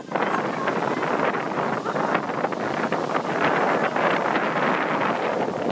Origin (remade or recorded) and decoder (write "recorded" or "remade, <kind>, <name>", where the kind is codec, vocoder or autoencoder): recorded